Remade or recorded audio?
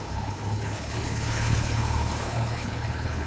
remade